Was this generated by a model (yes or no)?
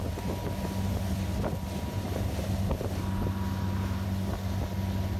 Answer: no